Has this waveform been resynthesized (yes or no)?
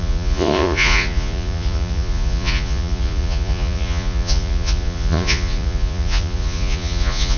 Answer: yes